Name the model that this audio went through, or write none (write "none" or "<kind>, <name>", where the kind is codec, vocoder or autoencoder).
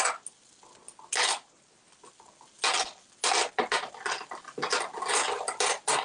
none